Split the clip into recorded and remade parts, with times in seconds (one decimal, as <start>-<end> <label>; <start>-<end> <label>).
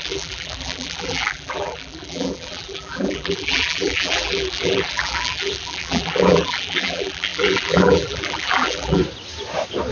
0.0-9.0 remade; 9.0-9.9 recorded